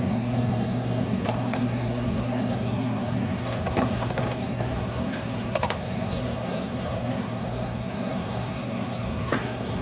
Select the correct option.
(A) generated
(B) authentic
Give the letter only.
A